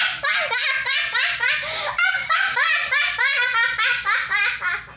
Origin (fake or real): real